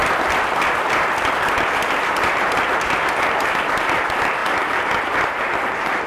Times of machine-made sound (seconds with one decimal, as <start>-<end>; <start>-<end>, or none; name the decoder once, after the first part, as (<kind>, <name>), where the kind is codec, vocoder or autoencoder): 4.4-5.0 (vocoder, BigVGAN v2)